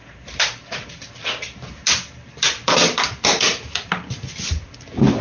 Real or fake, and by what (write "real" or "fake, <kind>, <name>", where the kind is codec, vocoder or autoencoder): real